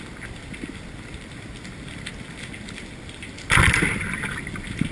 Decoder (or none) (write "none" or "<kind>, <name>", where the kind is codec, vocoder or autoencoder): none